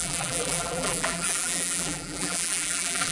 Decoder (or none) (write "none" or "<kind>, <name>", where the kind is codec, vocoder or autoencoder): vocoder, BigVGAN v2